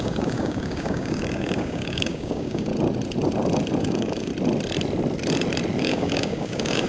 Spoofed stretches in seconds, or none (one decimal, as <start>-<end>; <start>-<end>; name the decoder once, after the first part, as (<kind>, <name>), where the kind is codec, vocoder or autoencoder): 0.0-2.7 (codec, DAC); 3.8-4.3; 5.8-6.9